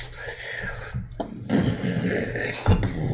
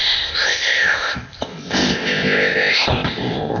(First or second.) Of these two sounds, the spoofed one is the second